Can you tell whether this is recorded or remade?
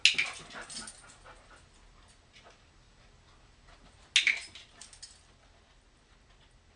recorded